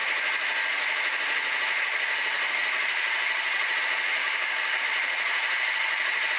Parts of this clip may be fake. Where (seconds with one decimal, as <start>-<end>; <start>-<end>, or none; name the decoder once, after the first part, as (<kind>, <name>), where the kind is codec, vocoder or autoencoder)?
4.2-4.8 (codec, DAC)

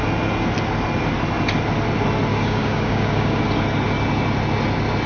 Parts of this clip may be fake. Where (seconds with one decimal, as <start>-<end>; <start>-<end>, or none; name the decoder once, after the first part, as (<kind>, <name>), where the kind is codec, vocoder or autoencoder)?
2.3-3.4 (codec, DAC)

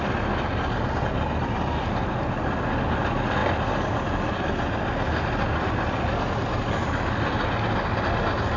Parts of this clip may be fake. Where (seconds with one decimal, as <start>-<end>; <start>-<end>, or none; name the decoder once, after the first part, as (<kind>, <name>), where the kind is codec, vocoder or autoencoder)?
none

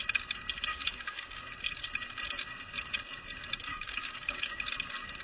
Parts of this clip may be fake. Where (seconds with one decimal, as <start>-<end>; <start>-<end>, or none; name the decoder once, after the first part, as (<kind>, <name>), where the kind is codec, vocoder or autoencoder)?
0.7-1.4 (codec, DAC); 3.7-4.6

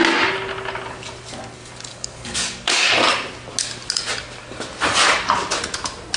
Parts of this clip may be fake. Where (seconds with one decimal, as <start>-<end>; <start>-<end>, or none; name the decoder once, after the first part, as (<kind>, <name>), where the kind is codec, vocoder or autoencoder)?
1.9-2.9 (codec, DAC)

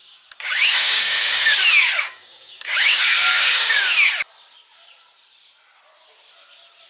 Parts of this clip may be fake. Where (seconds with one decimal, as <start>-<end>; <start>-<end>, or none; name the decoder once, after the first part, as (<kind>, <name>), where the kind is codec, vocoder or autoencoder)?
0.0-4.1 (codec, DAC)

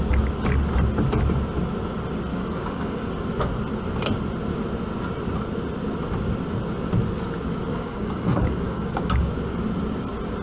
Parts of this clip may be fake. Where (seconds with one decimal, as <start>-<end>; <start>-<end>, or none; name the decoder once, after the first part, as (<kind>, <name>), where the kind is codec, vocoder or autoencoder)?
2.3-3.1 (codec, DAC); 7.7-9.3